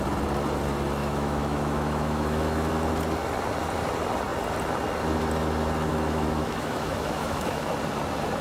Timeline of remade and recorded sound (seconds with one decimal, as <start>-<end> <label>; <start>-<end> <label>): 0.0-1.0 recorded; 1.0-2.7 remade; 2.7-5.9 recorded; 5.9-7.7 remade; 7.7-8.4 recorded